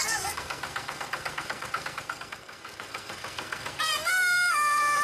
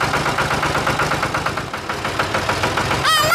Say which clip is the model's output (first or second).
first